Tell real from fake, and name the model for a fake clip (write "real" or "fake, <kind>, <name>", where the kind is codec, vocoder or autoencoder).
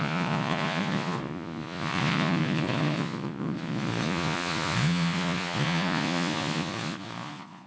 fake, vocoder, Vocos